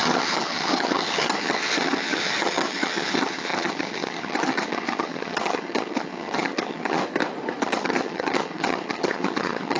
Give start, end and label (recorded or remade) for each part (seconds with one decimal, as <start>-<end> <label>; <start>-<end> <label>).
0.0-7.0 remade; 7.0-7.6 recorded; 7.6-9.8 remade